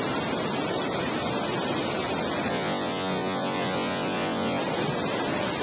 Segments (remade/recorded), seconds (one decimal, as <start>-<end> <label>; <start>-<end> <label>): 0.0-2.5 recorded; 2.5-4.6 remade; 4.6-5.6 recorded